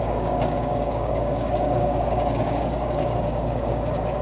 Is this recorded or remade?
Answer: remade